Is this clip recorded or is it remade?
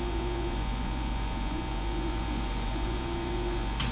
remade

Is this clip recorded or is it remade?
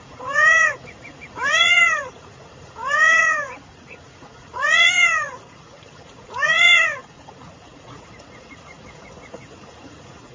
remade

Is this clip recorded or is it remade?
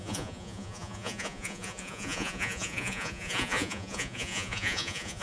remade